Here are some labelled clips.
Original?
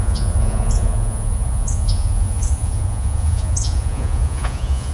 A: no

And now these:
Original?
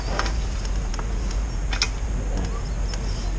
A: yes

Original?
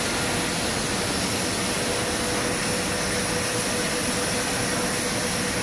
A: yes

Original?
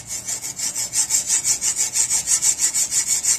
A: no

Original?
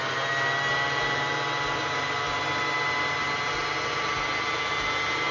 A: yes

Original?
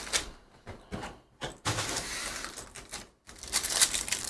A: no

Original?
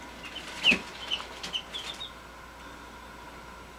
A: yes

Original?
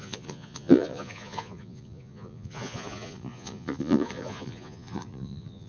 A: no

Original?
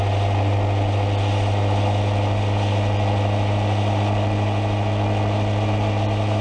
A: yes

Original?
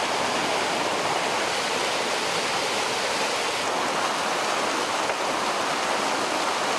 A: yes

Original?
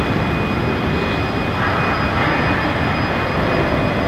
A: yes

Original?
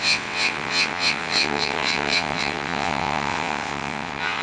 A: no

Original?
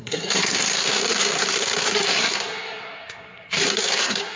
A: no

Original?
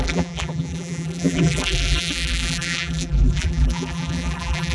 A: no